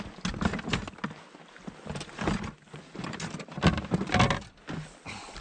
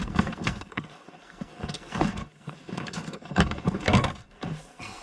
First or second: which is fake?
second